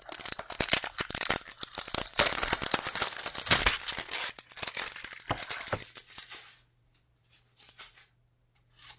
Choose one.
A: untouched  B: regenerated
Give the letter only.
A